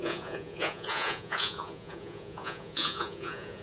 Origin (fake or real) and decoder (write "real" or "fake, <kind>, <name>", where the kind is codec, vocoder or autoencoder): fake, vocoder, Vocos